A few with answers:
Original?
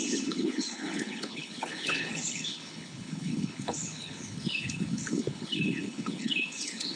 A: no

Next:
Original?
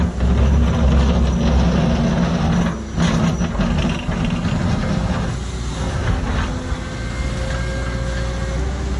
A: yes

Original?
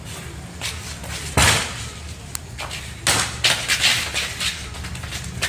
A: yes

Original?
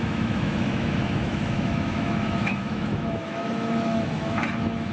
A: no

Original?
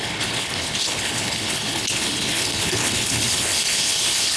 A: no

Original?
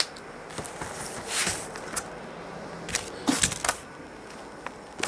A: yes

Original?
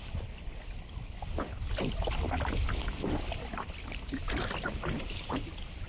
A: yes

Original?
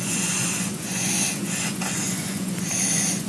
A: no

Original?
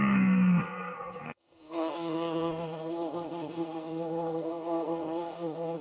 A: no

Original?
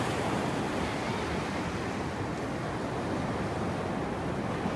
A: yes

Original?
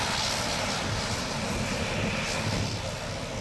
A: yes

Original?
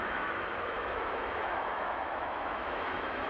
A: no